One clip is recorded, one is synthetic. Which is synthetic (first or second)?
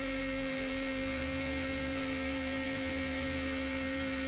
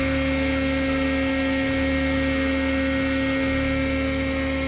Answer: first